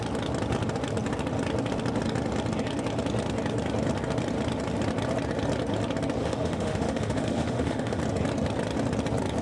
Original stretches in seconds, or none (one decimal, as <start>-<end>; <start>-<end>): 0.0-6.2; 8.0-9.4